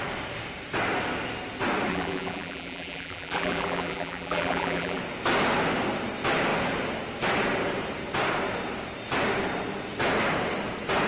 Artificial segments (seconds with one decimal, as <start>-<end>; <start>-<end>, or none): 1.9-5.0